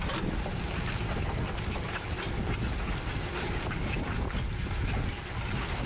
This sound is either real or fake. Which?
real